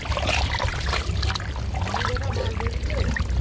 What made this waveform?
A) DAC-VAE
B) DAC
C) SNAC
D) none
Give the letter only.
D